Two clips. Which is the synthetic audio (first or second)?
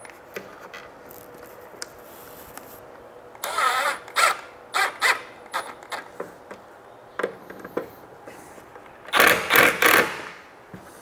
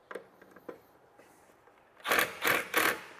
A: second